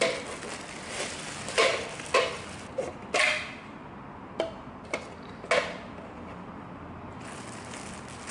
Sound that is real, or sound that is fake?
real